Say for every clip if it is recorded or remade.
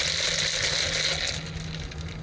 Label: recorded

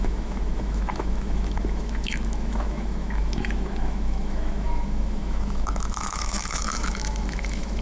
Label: remade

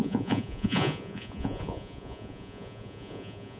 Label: remade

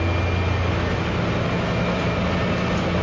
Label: recorded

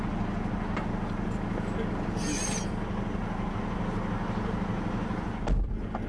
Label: recorded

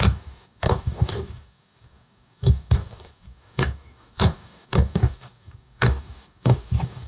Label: remade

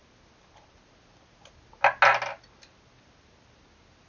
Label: recorded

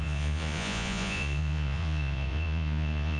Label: remade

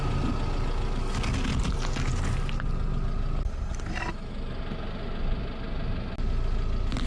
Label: recorded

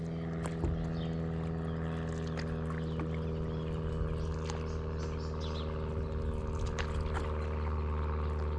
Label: recorded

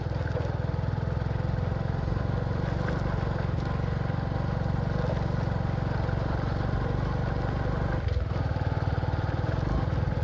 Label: recorded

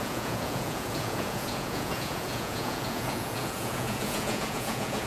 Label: remade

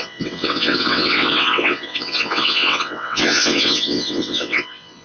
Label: remade